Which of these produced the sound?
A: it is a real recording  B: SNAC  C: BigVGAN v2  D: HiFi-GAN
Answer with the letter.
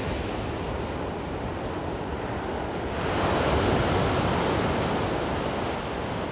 A